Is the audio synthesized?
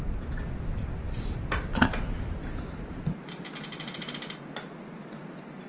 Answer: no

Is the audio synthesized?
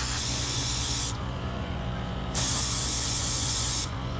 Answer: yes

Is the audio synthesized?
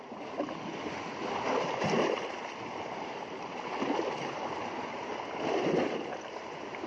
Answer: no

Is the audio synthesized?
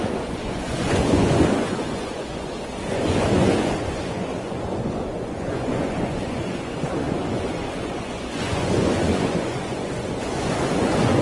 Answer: yes